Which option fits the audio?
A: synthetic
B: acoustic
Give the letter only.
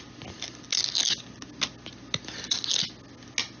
B